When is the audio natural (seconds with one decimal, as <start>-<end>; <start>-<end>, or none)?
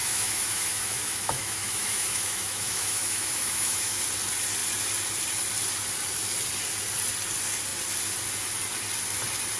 4.0-9.6